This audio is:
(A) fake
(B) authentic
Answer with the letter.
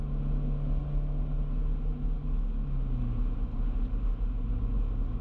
B